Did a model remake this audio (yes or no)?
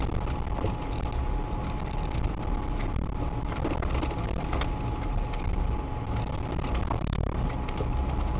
no